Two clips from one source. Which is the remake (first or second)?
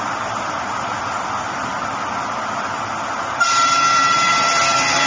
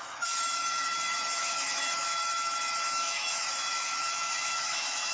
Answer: second